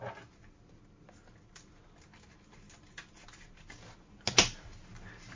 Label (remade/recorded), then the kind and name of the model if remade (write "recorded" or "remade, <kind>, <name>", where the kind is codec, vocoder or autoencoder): recorded